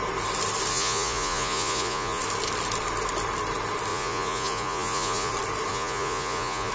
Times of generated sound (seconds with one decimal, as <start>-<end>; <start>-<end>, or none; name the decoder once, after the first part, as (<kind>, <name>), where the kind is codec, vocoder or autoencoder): 0.7-2.2 (vocoder, Vocos); 3.9-5.3; 5.7-6.7